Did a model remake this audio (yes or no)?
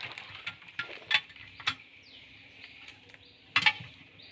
no